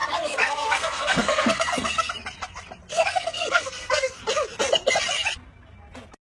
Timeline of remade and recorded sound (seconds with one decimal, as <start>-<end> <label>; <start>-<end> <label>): 0.0-2.1 remade; 2.1-2.9 recorded; 2.9-4.2 remade; 4.2-6.3 recorded